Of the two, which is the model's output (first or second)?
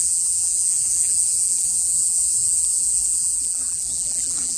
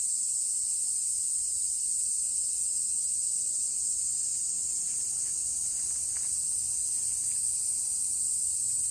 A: first